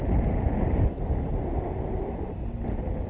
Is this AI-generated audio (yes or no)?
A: no